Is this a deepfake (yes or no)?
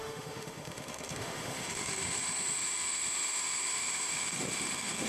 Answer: yes